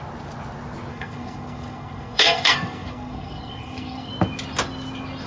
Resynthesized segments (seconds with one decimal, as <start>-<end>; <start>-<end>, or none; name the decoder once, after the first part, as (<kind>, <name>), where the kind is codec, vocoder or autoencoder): 0.9-4.1 (codec, SNAC)